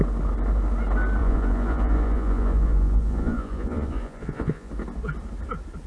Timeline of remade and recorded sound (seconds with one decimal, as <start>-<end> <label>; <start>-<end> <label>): 0.0-1.2 recorded; 1.2-4.7 remade; 4.7-5.9 recorded